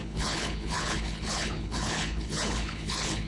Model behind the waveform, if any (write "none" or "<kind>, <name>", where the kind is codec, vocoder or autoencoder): codec, HILCodec